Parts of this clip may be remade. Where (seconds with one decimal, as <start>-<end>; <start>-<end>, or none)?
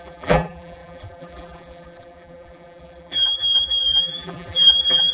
0.0-5.1